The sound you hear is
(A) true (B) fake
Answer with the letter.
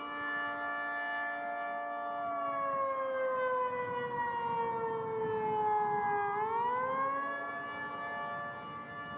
A